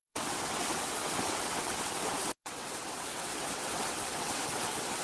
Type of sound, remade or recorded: remade